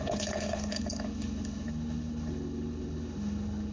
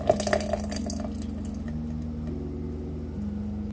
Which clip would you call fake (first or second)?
first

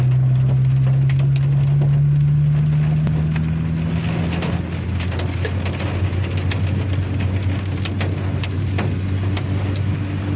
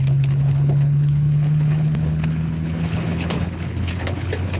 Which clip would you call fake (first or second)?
second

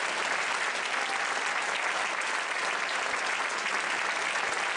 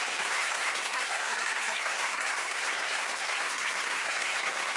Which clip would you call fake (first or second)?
second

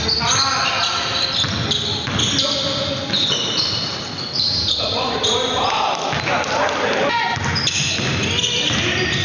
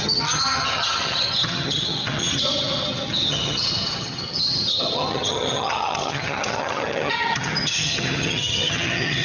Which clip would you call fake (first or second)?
second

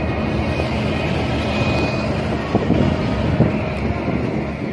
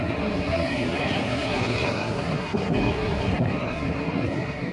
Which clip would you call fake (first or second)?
second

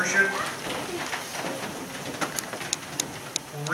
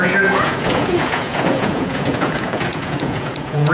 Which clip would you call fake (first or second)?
second